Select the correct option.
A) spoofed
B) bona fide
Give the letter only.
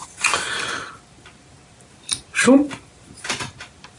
A